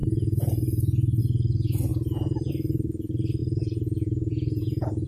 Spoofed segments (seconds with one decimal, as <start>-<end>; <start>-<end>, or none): 0.0-1.2; 1.9-2.5; 3.4-5.1